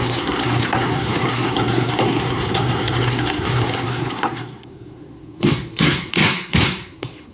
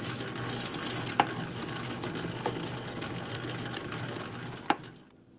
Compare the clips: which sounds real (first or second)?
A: second